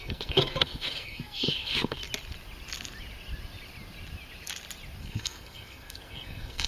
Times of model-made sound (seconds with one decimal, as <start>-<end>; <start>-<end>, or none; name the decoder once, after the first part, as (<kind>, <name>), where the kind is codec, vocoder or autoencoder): 0.0-2.0 (codec, SNAC); 5.0-6.7